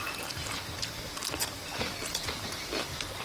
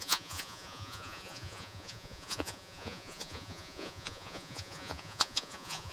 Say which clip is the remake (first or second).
second